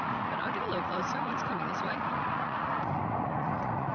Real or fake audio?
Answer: fake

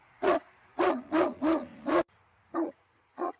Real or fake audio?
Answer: fake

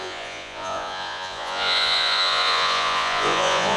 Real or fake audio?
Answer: fake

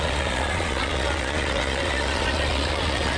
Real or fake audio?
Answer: fake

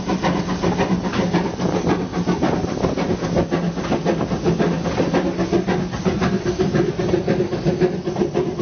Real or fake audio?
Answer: real